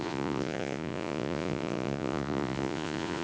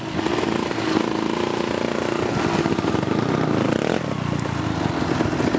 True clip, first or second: second